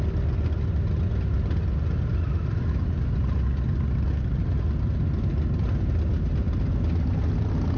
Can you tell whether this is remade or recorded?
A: recorded